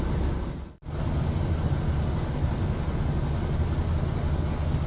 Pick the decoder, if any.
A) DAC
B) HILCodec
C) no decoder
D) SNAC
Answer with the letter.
C